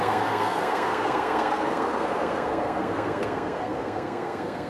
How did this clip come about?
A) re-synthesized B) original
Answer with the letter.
A